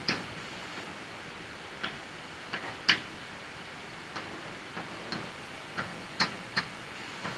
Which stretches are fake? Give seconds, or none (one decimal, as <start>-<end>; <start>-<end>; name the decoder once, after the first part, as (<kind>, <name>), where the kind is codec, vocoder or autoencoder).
0.0-0.9 (vocoder, Vocos); 5.3-7.4